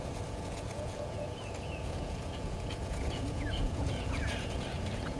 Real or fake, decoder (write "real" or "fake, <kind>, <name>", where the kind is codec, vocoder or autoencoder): fake, vocoder, Vocos